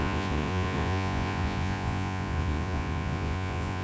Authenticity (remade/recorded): remade